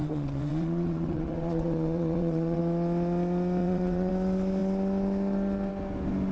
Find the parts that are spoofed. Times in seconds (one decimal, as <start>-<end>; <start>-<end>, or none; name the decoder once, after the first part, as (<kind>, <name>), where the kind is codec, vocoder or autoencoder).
0.0-2.6 (vocoder, WaveNeXt); 3.6-4.1